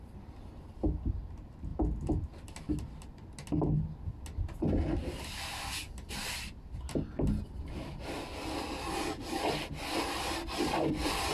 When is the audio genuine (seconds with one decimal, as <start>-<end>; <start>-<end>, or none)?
0.0-11.3